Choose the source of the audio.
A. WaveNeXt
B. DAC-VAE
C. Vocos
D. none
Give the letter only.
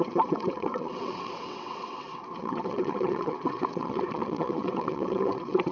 A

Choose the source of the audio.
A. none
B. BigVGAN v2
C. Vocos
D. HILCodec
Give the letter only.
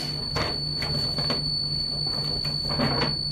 A